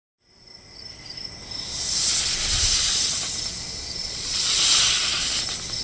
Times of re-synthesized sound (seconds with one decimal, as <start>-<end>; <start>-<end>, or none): 4.0-4.8